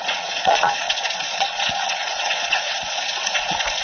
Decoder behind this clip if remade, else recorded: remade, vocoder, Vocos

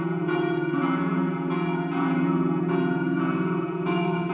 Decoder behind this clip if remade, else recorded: remade, vocoder, Vocos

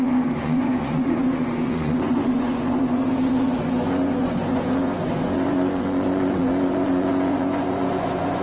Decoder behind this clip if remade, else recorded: remade, vocoder, Vocos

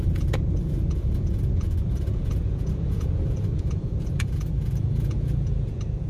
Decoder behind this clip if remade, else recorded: remade, vocoder, Vocos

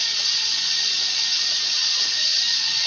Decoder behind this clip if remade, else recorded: remade, vocoder, Vocos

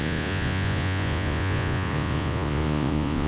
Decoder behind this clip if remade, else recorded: remade, vocoder, Vocos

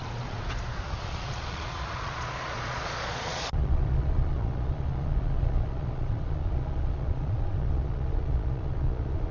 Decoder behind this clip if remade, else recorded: remade, vocoder, Vocos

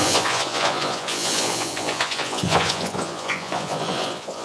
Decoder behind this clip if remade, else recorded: remade, vocoder, Vocos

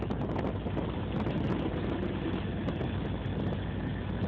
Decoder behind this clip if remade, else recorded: recorded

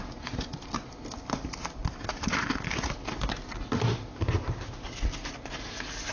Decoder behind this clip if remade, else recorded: recorded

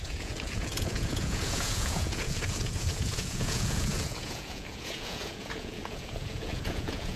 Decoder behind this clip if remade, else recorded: remade, vocoder, Vocos